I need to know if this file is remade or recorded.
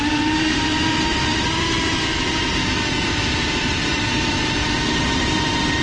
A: remade